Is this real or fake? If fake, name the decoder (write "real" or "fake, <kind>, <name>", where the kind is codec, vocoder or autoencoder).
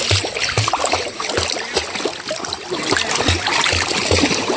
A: real